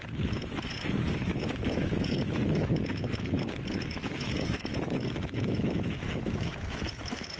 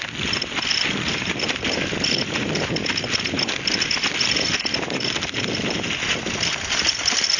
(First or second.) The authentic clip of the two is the second